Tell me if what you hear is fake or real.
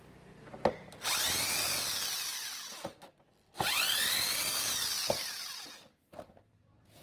real